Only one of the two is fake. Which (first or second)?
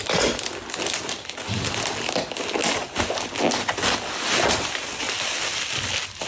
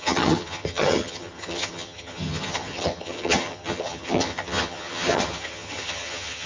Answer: second